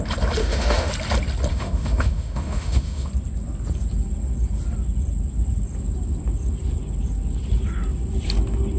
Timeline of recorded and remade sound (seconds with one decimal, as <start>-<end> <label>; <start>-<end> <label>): 0.0-0.4 recorded; 0.4-0.9 remade; 0.9-1.5 recorded; 1.5-3.1 remade; 3.1-8.8 recorded